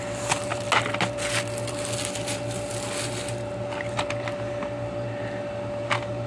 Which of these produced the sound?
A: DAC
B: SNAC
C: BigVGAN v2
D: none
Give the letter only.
D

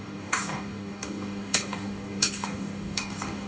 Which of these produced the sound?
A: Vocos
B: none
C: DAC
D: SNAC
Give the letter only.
C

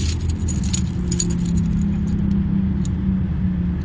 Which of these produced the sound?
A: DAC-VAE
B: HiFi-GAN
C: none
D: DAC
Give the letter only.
C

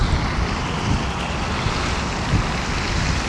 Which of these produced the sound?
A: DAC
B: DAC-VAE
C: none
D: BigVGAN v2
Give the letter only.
C